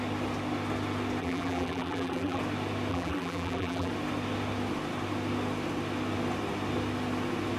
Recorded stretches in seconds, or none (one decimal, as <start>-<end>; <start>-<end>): 0.0-1.2; 2.4-2.9; 3.9-7.6